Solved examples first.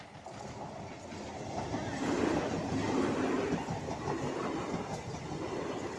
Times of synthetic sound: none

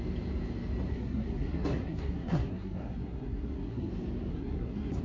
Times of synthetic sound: 0.9-3.9 (codec, SNAC); 4.3-5.0

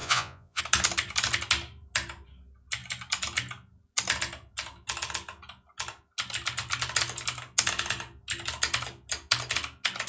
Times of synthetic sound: 0.0-0.6 (vocoder, Vocos)

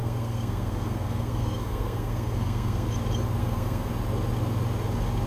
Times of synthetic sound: 0.0-2.9 (codec, SNAC); 3.4-3.9

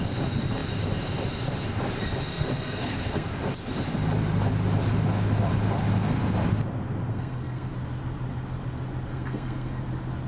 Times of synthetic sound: 2.3-3.3 (codec, SNAC); 7.1-7.7; 9.1-9.8

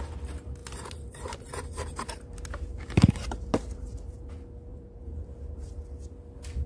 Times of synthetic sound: 0.6-4.3 (vocoder, BigVGAN v2); 4.7-5.7

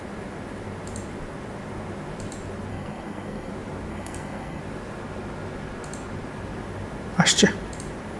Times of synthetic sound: 2.7-3.5 (codec, SNAC); 3.9-4.6

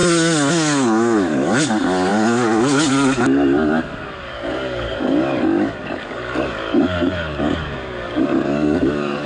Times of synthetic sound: 0.5-9.3 (codec, DAC)